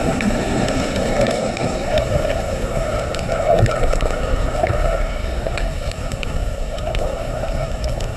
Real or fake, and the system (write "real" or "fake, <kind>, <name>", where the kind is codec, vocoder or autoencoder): fake, codec, SNAC